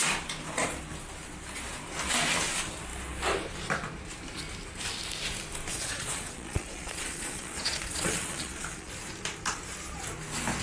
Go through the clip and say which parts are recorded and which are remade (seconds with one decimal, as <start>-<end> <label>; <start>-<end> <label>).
0.0-5.7 recorded; 5.7-8.9 remade; 8.9-10.6 recorded